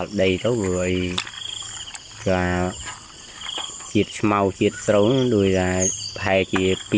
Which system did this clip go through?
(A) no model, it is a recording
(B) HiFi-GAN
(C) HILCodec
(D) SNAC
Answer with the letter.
A